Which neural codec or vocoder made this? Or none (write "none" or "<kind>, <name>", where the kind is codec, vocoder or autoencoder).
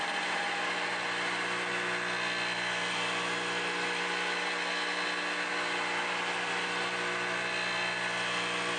none